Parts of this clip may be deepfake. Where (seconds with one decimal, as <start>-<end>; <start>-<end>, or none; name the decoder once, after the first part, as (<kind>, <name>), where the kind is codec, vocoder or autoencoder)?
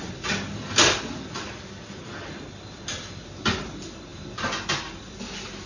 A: none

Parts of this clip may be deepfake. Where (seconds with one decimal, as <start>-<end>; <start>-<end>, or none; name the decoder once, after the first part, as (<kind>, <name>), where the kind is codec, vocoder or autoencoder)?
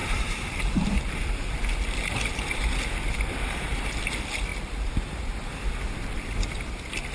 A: 0.0-1.0 (vocoder, BigVGAN v2)